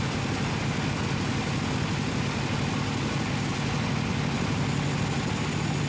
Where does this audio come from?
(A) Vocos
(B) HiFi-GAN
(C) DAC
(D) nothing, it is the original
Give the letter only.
D